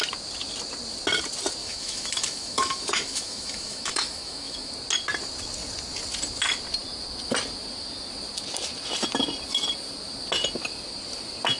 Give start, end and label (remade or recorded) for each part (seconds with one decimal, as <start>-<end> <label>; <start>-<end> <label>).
0.0-1.6 recorded; 1.6-4.7 remade; 4.7-11.6 recorded